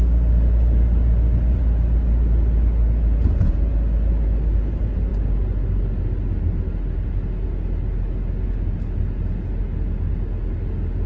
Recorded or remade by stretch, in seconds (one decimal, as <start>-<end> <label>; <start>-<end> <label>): 0.0-11.1 recorded